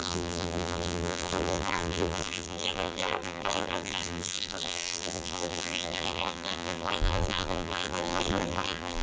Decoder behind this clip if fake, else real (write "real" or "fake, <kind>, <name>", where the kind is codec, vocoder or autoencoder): fake, vocoder, BigVGAN v2